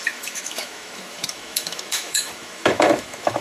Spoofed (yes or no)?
yes